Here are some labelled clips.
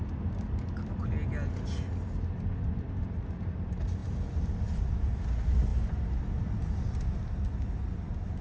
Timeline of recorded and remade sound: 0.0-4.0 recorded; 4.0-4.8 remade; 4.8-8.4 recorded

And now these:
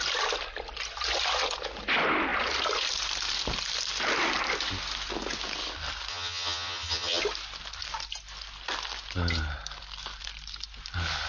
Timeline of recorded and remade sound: 0.0-6.1 recorded; 6.1-7.2 remade; 7.2-11.3 recorded